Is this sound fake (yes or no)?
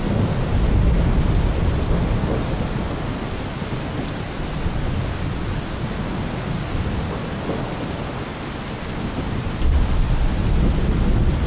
no